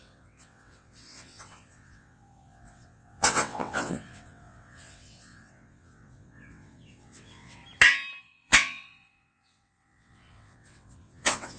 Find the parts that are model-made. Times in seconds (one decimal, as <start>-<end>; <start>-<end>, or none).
0.0-7.6; 8.2-11.6